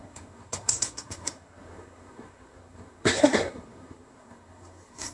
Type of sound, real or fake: fake